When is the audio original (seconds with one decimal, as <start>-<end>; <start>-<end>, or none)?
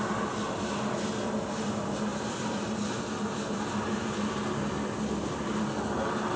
0.0-6.4